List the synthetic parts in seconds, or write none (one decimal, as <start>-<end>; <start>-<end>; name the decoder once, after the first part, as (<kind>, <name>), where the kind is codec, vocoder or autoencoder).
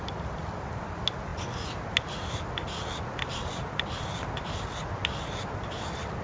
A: none